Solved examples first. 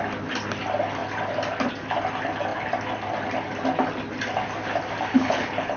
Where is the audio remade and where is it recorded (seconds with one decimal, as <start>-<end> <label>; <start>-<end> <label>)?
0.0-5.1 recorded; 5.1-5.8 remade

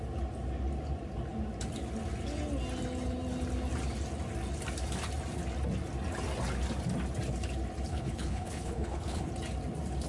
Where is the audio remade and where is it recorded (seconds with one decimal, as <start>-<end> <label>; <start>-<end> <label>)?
0.0-7.9 recorded; 7.9-9.3 remade; 9.3-10.1 recorded

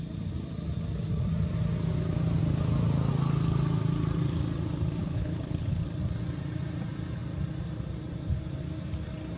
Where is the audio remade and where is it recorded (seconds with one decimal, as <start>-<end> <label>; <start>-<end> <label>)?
0.0-5.0 recorded; 5.0-5.8 remade; 5.8-9.4 recorded